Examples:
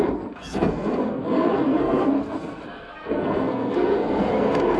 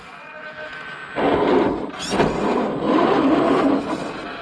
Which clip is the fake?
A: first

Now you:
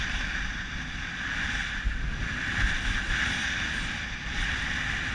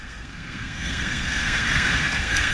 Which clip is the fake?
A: second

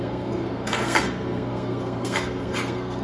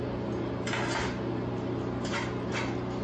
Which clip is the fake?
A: first